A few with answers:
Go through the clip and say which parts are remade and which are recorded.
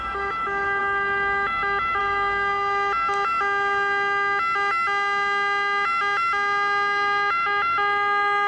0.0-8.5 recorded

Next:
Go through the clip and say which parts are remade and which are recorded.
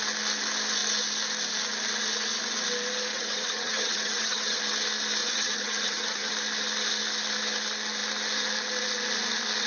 0.0-3.1 recorded; 3.1-4.6 remade; 4.6-5.2 recorded; 5.2-6.3 remade; 6.3-9.7 recorded